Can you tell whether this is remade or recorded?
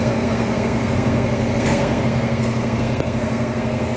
remade